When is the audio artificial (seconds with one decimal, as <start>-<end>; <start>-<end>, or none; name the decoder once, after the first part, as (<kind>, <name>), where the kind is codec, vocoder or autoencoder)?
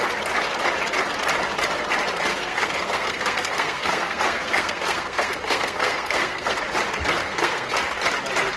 2.3-6.6 (codec, SNAC); 7.2-7.8